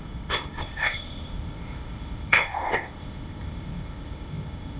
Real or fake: fake